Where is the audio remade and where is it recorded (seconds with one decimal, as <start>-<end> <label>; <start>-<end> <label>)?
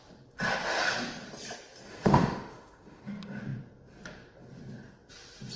0.0-1.9 recorded; 1.9-3.0 remade; 3.0-5.6 recorded